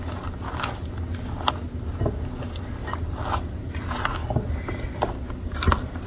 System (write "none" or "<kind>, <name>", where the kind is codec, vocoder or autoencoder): none